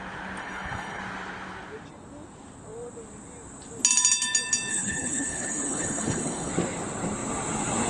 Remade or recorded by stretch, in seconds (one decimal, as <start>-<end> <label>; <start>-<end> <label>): 0.0-0.4 recorded; 0.4-1.0 remade; 1.0-4.7 recorded; 4.7-6.5 remade; 6.5-7.9 recorded